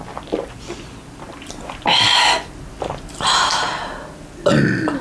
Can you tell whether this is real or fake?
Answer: real